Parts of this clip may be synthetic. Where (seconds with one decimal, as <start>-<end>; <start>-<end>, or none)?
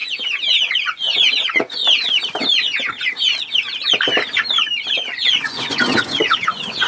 0.7-1.8; 4.9-6.9